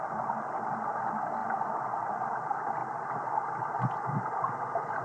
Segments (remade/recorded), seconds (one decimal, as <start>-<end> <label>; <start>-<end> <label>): 0.0-5.0 recorded